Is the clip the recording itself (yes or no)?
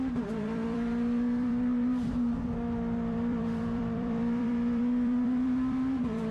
no